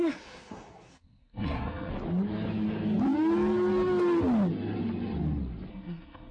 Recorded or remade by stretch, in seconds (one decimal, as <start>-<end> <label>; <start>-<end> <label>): 0.0-1.9 remade; 1.9-5.7 recorded; 5.7-6.3 remade